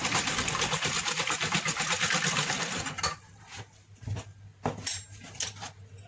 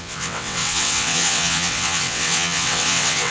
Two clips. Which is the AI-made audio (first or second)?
second